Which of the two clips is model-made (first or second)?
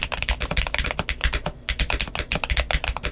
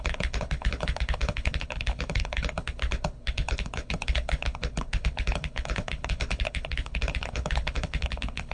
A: second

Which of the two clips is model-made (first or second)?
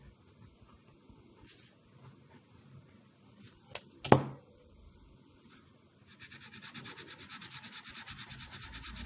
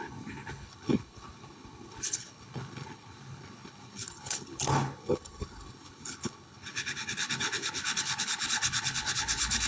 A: second